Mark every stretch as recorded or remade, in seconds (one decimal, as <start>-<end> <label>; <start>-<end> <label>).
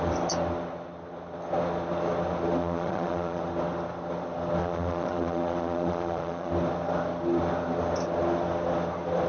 0.0-2.6 recorded; 2.6-3.4 remade; 3.4-4.6 recorded; 4.6-6.5 remade; 6.5-9.3 recorded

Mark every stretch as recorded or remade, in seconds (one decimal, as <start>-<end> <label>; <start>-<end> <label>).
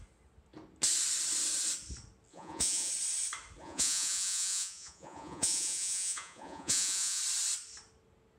0.0-2.3 recorded; 2.3-2.9 remade; 2.9-3.6 recorded; 3.6-7.2 remade; 7.2-8.4 recorded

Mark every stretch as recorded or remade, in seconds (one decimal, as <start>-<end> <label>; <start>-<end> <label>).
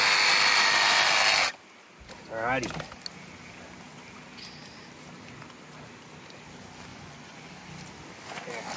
0.0-6.9 recorded; 6.9-7.5 remade; 7.5-8.8 recorded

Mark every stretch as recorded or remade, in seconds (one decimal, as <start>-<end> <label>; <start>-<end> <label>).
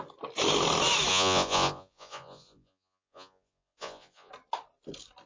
0.0-1.1 recorded; 1.1-4.3 remade; 4.3-5.3 recorded